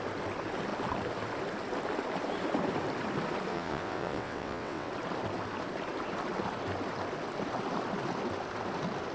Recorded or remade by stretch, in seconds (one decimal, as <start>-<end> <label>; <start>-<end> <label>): 0.0-3.5 recorded; 3.5-4.9 remade; 4.9-9.1 recorded